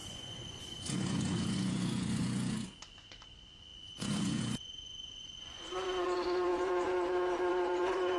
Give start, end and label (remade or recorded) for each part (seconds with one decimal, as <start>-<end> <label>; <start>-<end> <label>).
0.0-8.2 remade

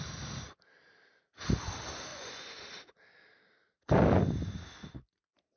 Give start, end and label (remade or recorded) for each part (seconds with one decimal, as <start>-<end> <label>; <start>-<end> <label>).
0.0-2.1 recorded; 2.1-2.6 remade; 2.6-5.6 recorded

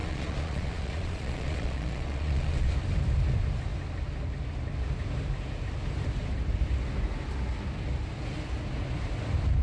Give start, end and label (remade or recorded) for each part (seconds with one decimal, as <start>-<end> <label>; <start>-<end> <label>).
0.0-2.7 remade; 2.7-9.6 recorded

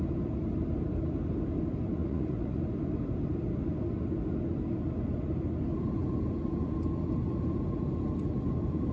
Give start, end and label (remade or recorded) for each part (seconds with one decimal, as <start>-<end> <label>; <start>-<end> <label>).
0.0-2.0 recorded; 2.0-2.6 remade; 2.6-8.9 recorded

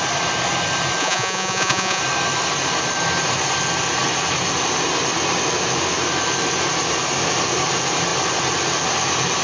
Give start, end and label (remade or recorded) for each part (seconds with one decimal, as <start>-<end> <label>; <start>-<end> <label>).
0.0-1.0 recorded; 1.0-2.0 remade; 2.0-9.4 recorded

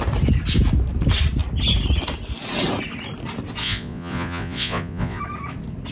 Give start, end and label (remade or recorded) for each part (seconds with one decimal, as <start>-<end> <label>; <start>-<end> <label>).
0.0-3.6 recorded; 3.6-5.2 remade; 5.2-5.9 recorded